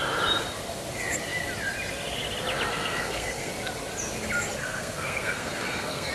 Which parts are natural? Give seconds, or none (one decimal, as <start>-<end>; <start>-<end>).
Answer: 0.0-2.7; 3.5-4.6